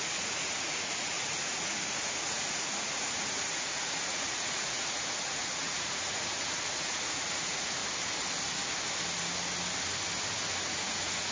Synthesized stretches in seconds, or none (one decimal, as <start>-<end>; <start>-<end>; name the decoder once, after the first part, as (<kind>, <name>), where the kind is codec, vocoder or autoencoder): 0.0-7.8 (vocoder, Vocos); 10.7-11.3